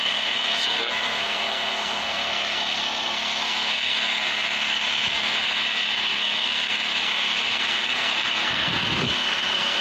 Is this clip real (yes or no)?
no